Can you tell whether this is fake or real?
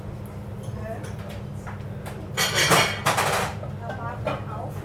real